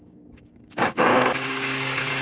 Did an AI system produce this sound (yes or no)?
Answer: yes